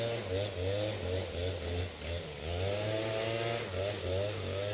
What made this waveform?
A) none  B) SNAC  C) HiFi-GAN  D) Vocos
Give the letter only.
A